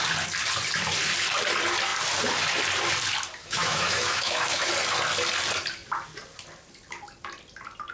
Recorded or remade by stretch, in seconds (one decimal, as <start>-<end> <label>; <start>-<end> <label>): 0.0-3.4 recorded; 3.4-4.7 remade; 4.7-7.9 recorded